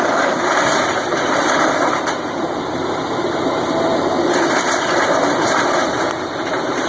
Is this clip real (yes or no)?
no